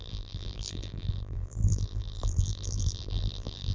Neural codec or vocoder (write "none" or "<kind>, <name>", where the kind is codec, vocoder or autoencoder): vocoder, BigVGAN v2